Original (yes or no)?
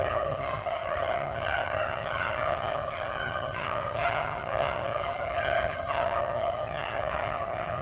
no